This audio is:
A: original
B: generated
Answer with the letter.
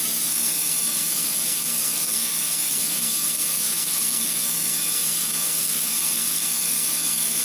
B